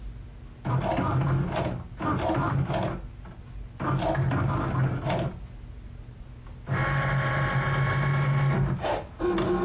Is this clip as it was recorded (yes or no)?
yes